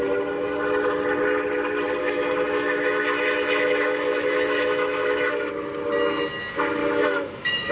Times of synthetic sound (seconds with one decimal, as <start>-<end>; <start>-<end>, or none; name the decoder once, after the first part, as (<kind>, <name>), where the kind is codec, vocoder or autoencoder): 2.0-5.5 (autoencoder, DAC-VAE); 6.8-7.7